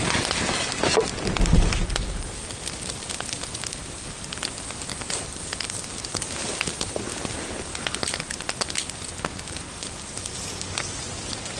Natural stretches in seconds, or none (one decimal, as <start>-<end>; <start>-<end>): 0.0-11.6